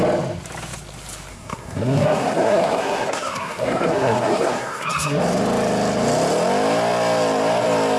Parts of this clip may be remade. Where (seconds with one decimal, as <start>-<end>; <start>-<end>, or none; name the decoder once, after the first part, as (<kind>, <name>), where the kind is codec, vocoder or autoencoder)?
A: 1.3-5.2 (codec, SNAC)